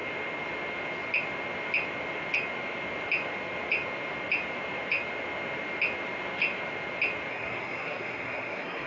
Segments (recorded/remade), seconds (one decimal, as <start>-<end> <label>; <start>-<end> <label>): 0.0-7.3 recorded; 7.3-8.9 remade